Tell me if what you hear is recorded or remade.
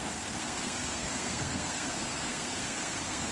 remade